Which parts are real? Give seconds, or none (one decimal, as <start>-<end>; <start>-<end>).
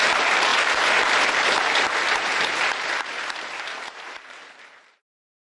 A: none